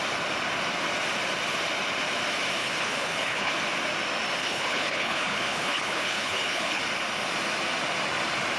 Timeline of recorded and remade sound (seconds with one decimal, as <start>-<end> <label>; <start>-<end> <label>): 0.0-2.6 recorded; 2.6-3.5 remade; 3.5-4.4 recorded; 4.4-6.8 remade; 6.8-8.6 recorded